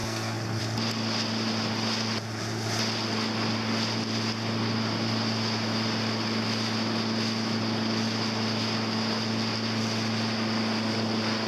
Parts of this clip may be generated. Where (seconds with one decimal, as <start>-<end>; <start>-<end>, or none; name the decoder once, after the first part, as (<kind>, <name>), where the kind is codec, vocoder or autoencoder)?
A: 0.0-0.6 (codec, SNAC)